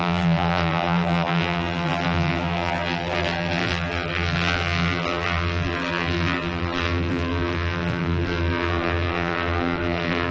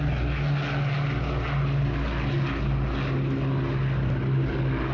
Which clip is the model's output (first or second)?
first